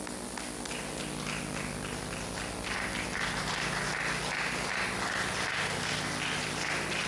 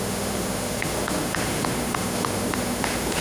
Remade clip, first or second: second